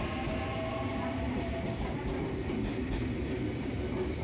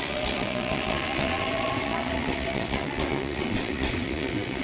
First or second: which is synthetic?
second